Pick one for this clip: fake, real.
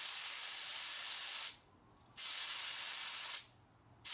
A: real